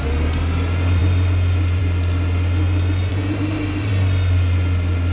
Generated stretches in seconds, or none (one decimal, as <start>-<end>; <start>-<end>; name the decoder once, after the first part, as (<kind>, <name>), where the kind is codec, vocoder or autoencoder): 3.1-3.9 (vocoder, BigVGAN v2)